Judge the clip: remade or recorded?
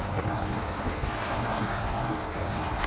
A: remade